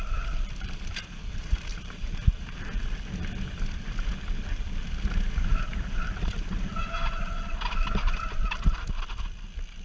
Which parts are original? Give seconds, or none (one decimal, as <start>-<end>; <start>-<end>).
0.0-1.7; 2.5-9.8